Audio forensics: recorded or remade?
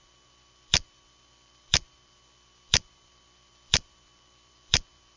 remade